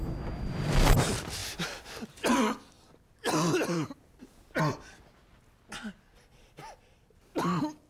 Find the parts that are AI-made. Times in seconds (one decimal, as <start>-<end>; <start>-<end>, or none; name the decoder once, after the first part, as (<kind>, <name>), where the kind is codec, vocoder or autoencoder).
none